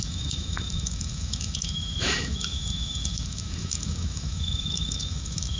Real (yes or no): no